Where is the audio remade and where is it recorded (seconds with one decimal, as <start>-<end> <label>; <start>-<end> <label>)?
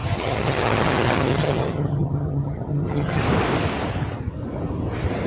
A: 0.0-3.2 remade; 3.2-5.3 recorded